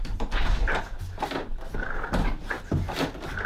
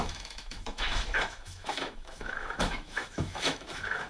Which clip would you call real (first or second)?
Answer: first